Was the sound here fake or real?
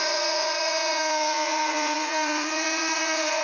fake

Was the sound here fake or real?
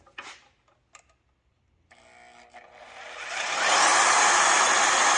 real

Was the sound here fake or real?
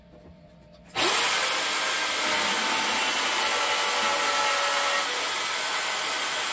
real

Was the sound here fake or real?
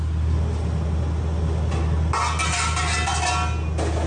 real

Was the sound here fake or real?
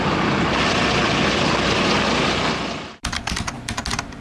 real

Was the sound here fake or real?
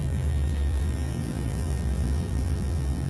fake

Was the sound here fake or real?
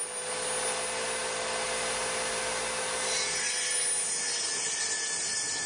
real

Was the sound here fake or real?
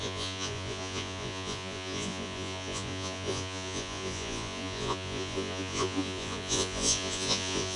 fake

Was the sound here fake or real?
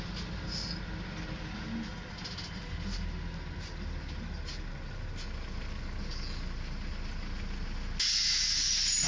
real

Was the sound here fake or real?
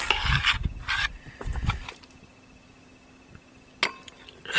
real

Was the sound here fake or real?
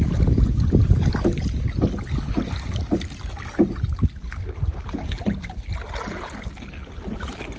real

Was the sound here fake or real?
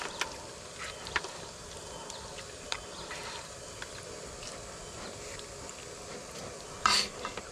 real